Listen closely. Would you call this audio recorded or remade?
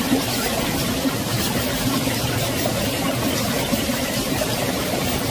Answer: recorded